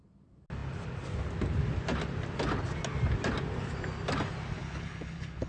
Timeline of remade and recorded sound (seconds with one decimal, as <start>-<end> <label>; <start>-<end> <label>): 0.0-4.6 recorded; 4.6-5.5 remade